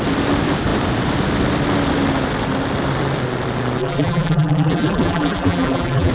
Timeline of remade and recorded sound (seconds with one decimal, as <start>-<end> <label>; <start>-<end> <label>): 0.0-3.8 recorded; 3.8-6.1 remade